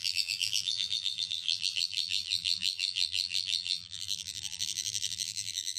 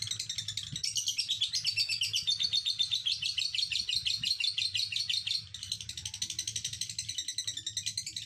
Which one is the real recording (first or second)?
second